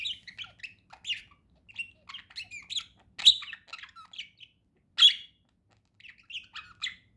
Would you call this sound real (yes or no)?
yes